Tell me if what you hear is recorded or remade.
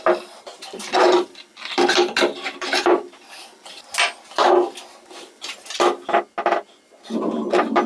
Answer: recorded